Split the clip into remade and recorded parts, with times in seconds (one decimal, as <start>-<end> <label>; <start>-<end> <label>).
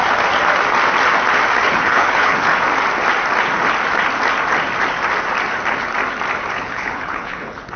0.0-1.6 recorded; 1.6-2.5 remade; 2.5-6.5 recorded; 6.5-7.8 remade